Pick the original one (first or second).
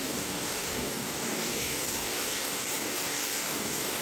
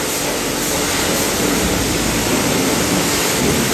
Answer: second